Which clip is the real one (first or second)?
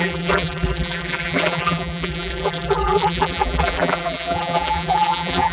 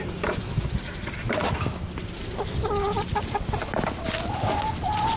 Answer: second